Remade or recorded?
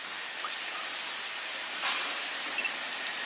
recorded